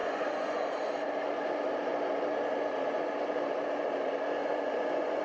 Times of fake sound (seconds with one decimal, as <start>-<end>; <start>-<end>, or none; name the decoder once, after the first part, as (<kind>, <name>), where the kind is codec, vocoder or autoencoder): 0.0-0.6 (vocoder, Vocos); 4.4-5.2